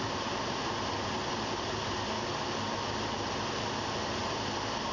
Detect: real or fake fake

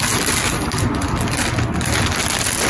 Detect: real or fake real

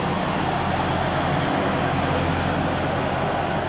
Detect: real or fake real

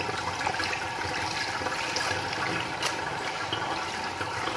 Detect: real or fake fake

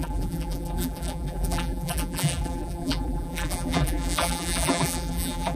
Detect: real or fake fake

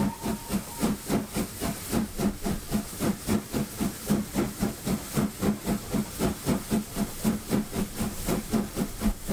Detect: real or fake real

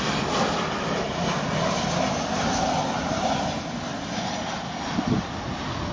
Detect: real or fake real